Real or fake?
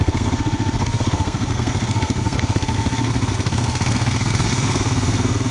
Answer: fake